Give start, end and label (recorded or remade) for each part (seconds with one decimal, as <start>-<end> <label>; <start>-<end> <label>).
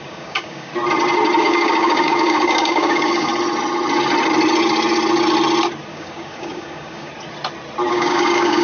0.0-0.7 remade; 0.7-1.4 recorded; 1.4-3.3 remade; 3.3-5.9 recorded; 5.9-7.1 remade; 7.1-7.9 recorded; 7.9-8.6 remade